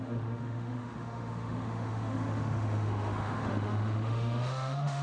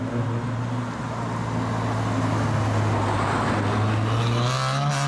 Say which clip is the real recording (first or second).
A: second